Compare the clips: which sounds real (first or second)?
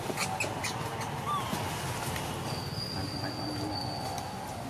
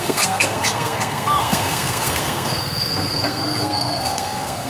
first